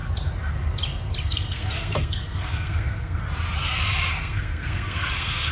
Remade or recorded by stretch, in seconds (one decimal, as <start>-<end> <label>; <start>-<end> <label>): 0.0-1.2 recorded; 1.2-3.2 remade; 3.2-4.1 recorded; 4.1-5.5 remade

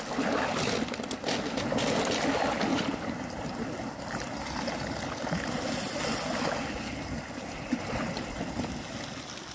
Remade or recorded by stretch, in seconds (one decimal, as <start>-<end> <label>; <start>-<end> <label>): 0.0-2.7 recorded; 2.7-4.0 remade; 4.0-9.5 recorded

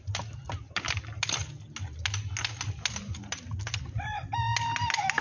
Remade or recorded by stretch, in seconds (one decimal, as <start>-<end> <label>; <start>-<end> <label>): 0.0-5.2 recorded

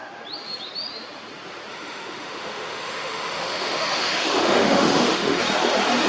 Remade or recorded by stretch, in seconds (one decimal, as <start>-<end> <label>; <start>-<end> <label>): 0.0-1.7 recorded; 1.7-5.4 remade; 5.4-6.1 recorded

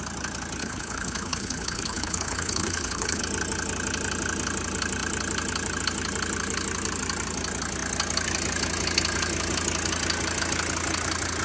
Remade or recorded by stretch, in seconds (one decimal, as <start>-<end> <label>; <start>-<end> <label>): 0.0-0.6 recorded; 0.6-3.2 remade; 3.2-11.4 recorded

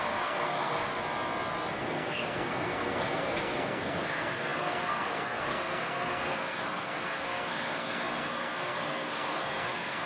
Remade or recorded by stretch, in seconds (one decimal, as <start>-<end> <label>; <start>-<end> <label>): 0.0-0.9 remade; 0.9-1.8 recorded; 1.8-10.1 remade

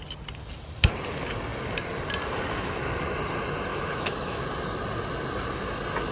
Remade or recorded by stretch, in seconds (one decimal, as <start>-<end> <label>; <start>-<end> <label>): 0.0-3.7 recorded; 3.7-4.4 remade; 4.4-6.1 recorded

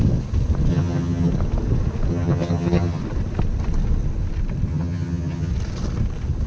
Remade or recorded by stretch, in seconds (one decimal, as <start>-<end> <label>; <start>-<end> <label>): 0.0-0.7 recorded; 0.7-1.3 remade; 1.3-2.1 recorded; 2.1-3.0 remade; 3.0-4.7 recorded; 4.7-5.5 remade; 5.5-6.5 recorded